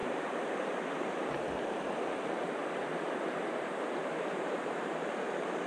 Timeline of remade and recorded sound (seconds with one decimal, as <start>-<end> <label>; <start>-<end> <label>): 0.0-2.6 remade; 2.6-4.3 recorded; 4.3-5.7 remade